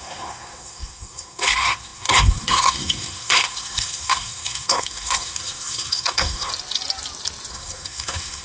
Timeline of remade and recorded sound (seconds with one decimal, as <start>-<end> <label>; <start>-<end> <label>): 0.0-6.5 remade; 6.5-7.5 recorded; 7.5-8.4 remade